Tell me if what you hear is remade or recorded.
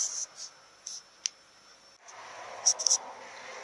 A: recorded